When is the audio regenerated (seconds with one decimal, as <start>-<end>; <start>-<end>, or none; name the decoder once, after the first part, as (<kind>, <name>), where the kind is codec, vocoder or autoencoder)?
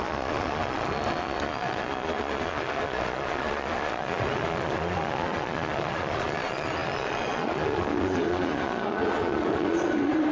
0.0-10.3 (vocoder, Vocos)